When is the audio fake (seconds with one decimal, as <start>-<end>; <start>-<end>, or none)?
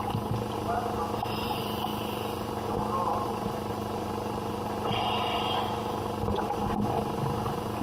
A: none